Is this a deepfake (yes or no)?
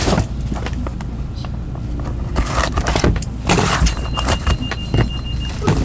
no